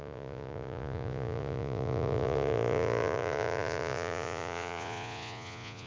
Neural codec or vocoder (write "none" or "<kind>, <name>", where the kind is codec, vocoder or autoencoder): vocoder, Vocos